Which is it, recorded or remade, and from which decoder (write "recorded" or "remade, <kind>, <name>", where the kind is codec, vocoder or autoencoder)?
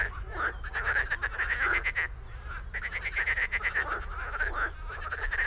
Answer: recorded